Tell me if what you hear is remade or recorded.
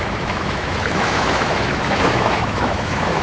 remade